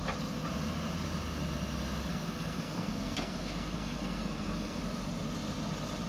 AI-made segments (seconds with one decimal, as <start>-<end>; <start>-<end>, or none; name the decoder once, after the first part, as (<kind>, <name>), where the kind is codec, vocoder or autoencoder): 2.1-4.8 (codec, SNAC)